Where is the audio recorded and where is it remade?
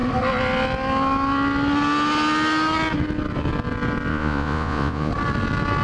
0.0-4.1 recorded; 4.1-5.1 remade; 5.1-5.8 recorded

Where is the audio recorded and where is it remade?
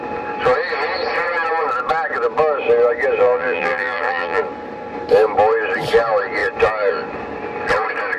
0.0-3.2 recorded; 3.2-4.4 remade; 4.4-8.2 recorded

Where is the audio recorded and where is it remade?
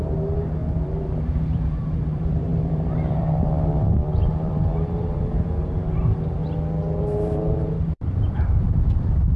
0.0-6.4 remade; 6.4-7.0 recorded; 7.0-9.4 remade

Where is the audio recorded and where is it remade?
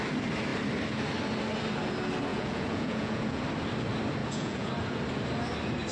0.0-2.3 recorded; 2.3-3.4 remade; 3.4-4.2 recorded; 4.2-4.7 remade; 4.7-5.9 recorded